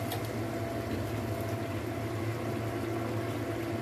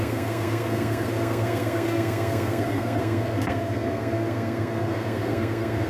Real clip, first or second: first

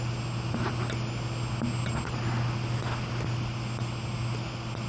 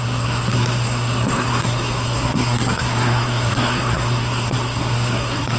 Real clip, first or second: first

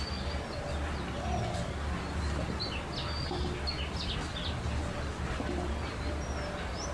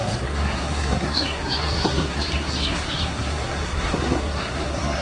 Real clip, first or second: first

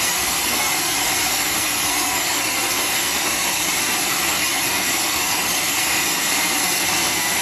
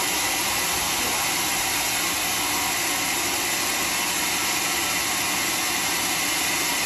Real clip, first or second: second